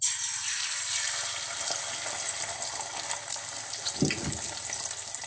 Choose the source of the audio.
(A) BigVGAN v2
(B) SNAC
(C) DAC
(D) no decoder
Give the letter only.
D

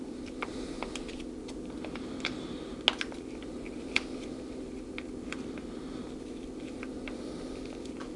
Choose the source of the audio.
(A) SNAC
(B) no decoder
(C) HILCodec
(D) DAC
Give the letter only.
B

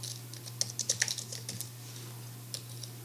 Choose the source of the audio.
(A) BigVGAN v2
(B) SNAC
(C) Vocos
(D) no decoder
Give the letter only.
D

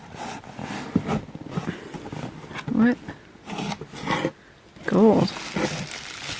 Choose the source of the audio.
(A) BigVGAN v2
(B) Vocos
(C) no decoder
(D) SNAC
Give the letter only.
C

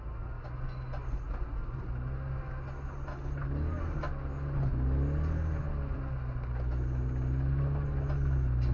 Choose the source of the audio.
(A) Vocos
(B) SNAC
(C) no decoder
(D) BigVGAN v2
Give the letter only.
C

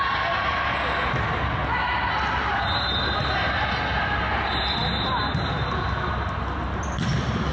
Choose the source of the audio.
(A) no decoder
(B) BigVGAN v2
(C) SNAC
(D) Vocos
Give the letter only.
A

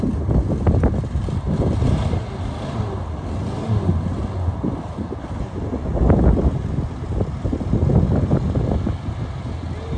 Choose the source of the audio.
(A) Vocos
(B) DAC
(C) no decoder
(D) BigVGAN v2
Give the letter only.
C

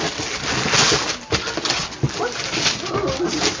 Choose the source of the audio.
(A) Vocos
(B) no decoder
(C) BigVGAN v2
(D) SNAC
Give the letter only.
B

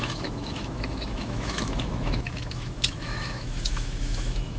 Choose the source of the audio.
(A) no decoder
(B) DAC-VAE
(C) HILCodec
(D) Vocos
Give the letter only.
B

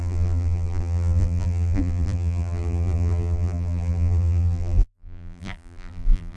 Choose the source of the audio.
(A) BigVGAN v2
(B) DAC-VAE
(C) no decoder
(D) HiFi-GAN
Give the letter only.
A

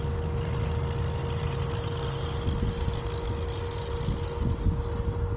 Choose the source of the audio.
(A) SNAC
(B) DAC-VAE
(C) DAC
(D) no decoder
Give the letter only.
D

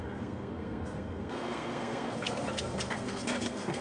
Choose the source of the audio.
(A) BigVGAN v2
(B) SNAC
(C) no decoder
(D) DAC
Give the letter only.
B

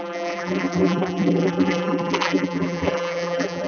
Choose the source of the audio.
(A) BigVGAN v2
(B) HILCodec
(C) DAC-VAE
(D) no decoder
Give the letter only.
A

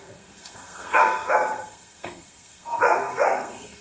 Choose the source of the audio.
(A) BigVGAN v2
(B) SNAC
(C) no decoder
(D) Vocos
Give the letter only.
B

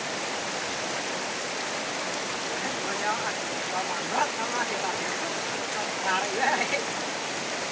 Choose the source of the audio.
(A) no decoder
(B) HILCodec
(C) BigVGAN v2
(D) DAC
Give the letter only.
A